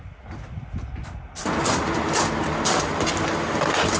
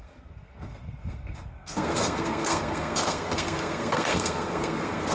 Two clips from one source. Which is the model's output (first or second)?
second